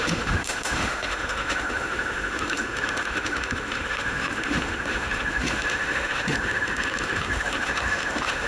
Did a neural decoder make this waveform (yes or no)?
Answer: yes